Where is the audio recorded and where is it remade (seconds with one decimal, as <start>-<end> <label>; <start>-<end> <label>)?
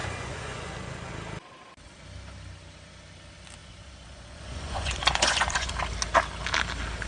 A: 0.0-1.1 remade; 1.1-3.6 recorded; 3.6-5.7 remade; 5.7-7.1 recorded